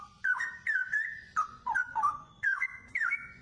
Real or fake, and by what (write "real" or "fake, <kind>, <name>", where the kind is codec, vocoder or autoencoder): fake, vocoder, Vocos